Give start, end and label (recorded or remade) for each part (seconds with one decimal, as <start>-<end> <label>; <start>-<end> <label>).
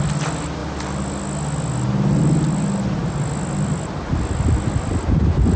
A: 0.0-5.6 recorded